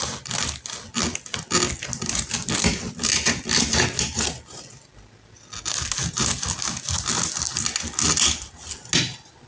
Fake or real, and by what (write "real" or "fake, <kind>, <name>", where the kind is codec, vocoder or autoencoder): real